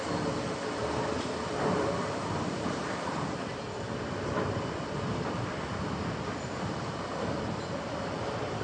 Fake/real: real